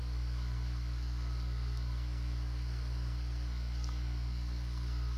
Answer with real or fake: fake